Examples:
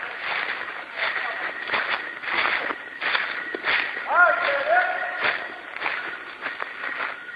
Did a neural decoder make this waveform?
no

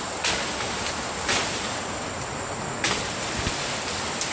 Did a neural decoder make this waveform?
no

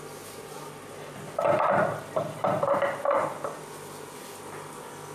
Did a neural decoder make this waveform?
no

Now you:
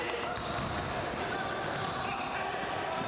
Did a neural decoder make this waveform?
no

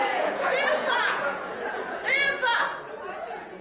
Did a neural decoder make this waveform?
yes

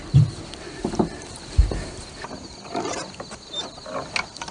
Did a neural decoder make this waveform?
no